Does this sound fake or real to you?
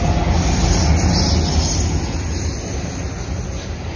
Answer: real